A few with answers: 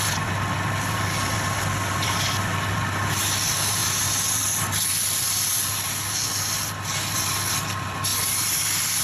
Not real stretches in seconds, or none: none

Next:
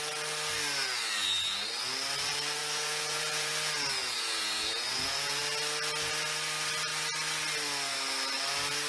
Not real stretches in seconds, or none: 2.6-3.5; 4.0-5.4